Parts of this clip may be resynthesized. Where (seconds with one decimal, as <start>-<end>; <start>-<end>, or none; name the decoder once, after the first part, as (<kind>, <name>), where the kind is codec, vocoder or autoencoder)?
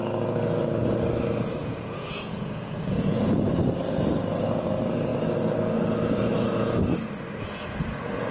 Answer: 1.6-3.5 (vocoder, Vocos)